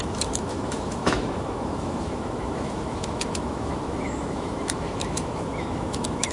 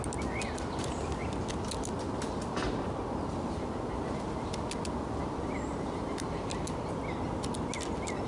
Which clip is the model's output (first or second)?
first